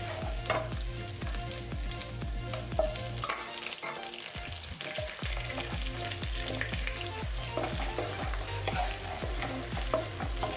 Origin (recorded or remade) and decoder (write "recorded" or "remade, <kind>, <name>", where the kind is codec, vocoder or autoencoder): recorded